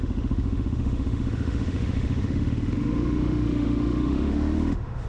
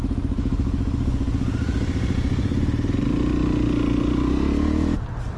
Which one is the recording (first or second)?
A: second